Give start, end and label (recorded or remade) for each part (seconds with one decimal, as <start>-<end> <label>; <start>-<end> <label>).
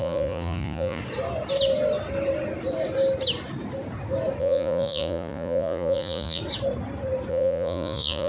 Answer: 0.0-1.0 remade; 1.0-4.4 recorded; 4.4-6.4 remade; 6.4-7.3 recorded; 7.3-8.3 remade